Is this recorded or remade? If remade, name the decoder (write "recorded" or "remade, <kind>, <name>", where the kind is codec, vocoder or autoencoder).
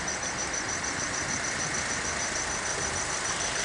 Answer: recorded